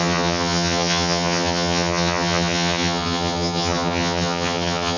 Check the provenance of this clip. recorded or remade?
remade